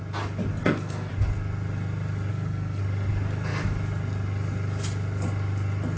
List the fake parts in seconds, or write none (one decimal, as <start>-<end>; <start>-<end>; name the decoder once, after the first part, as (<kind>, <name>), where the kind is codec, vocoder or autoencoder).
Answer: 0.6-1.1 (codec, SNAC); 2.3-2.8